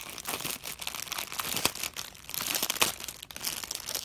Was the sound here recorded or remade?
recorded